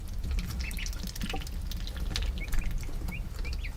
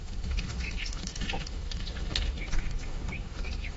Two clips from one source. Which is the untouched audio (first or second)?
first